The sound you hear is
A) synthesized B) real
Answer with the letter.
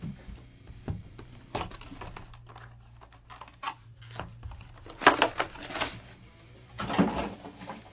B